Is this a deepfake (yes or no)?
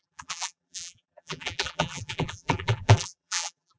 yes